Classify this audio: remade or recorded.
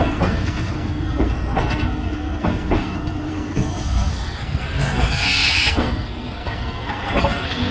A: remade